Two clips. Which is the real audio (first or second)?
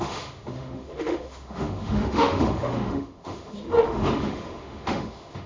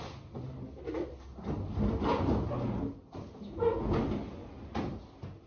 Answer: second